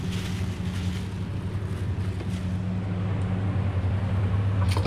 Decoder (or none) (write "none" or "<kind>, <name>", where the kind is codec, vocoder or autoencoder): none